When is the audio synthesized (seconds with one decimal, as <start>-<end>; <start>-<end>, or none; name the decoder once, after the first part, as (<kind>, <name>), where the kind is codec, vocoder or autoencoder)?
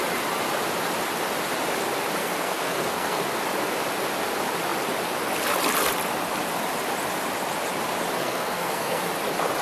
2.2-3.2 (codec, SNAC); 8.2-9.0